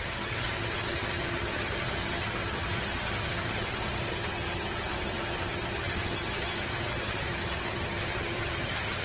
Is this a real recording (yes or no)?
no